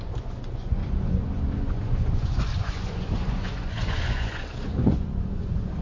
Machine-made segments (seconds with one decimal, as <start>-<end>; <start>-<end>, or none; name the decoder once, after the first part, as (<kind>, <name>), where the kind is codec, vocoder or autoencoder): 0.0-5.8 (vocoder, Vocos)